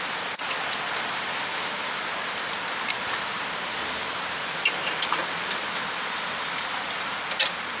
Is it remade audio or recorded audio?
recorded